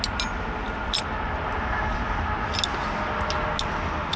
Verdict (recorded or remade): recorded